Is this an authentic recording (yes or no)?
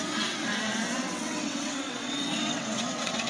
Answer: no